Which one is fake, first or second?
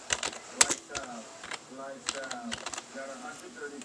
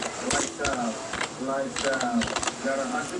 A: second